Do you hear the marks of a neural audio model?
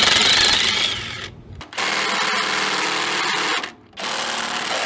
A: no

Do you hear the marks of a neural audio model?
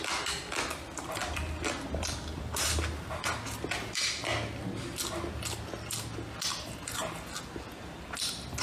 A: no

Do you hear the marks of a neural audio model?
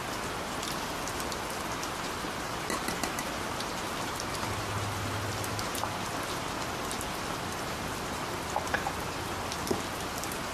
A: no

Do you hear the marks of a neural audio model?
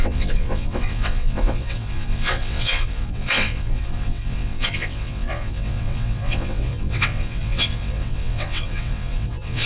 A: yes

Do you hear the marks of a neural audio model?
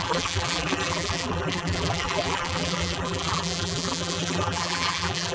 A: yes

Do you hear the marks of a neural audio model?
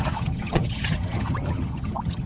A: yes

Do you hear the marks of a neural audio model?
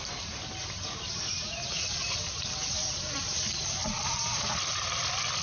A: no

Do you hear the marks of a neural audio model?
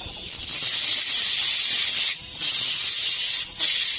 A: no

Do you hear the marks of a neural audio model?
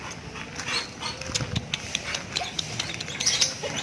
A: no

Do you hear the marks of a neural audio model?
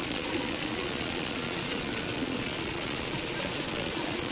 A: yes